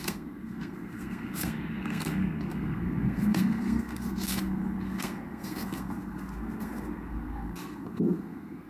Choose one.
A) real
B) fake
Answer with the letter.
B